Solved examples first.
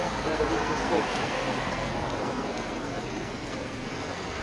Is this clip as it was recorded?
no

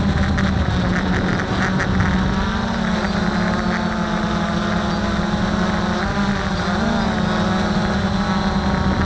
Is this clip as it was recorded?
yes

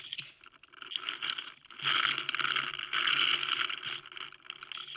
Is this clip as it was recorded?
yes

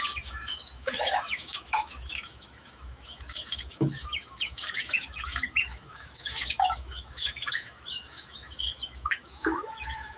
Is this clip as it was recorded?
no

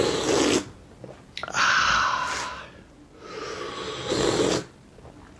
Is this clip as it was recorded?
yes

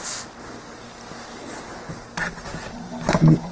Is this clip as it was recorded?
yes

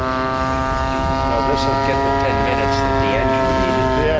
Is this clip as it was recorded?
yes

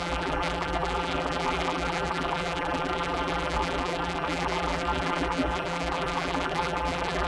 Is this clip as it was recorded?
no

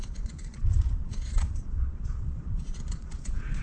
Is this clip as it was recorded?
no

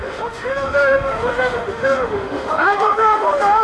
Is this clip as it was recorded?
no